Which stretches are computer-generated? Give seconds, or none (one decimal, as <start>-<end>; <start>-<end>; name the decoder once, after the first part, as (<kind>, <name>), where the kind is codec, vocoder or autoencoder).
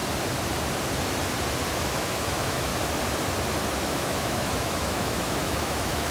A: 1.7-2.7 (autoencoder, DAC-VAE); 3.8-6.1